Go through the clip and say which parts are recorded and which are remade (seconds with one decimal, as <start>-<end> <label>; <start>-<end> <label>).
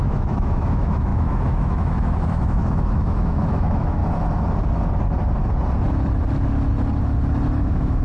0.0-4.0 remade; 4.0-7.6 recorded; 7.6-8.0 remade